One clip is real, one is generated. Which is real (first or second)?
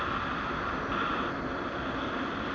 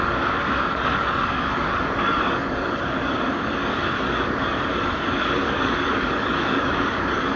first